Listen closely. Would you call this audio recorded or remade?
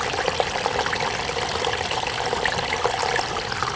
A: recorded